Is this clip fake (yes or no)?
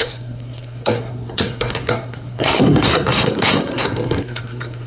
yes